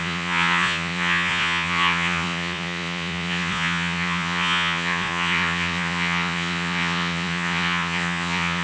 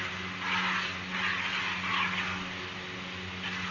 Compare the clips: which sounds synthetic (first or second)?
first